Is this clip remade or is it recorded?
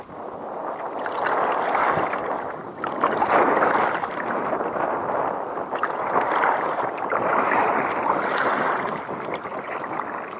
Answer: recorded